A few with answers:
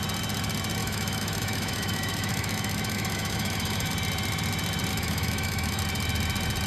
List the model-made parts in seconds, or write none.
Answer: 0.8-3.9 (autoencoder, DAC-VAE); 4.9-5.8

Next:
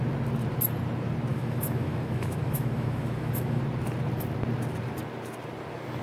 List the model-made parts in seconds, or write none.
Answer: 1.3-3.6 (autoencoder, DAC-VAE)